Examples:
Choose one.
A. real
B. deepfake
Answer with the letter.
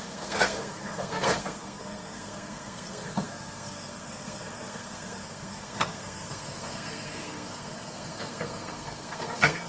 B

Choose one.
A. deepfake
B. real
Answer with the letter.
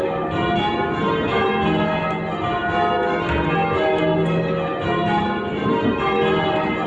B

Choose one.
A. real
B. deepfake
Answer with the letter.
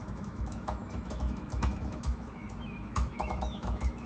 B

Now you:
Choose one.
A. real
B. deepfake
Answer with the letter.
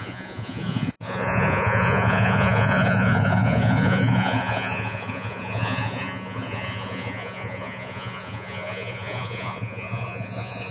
B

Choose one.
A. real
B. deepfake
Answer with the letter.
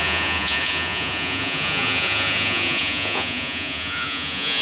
B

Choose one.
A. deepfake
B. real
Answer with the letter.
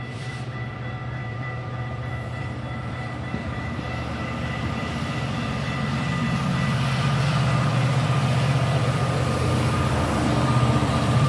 A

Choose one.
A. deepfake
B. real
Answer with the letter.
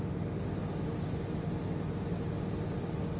B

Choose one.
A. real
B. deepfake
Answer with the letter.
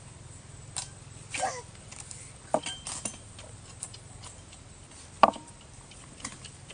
B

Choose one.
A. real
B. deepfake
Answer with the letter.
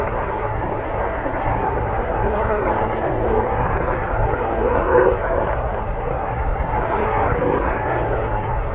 B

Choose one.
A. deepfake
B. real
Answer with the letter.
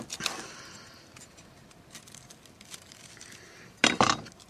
B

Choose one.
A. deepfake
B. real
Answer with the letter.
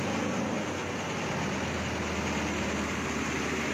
B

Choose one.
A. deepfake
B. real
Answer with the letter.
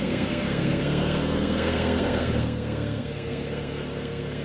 A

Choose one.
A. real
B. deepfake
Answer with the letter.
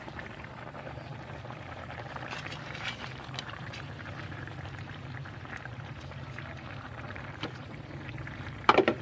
B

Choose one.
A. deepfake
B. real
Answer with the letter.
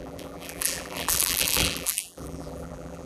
A